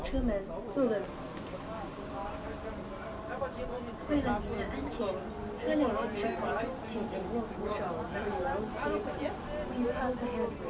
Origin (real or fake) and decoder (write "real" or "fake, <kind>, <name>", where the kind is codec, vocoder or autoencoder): real